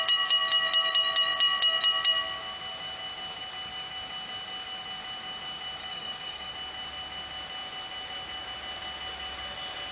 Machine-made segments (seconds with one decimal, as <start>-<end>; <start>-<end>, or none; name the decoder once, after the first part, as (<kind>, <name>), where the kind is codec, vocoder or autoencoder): 5.8-6.5 (codec, DAC)